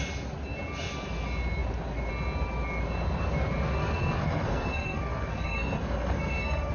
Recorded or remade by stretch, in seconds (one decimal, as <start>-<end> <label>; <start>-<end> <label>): 0.0-3.8 recorded; 3.8-6.7 remade